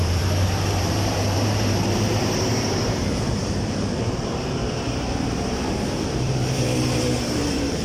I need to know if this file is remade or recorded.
remade